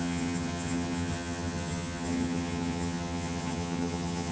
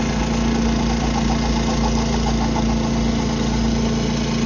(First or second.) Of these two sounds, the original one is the second